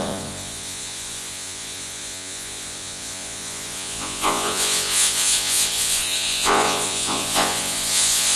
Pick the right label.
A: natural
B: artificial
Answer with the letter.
B